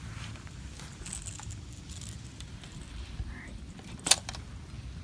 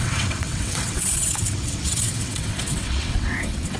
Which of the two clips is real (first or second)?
first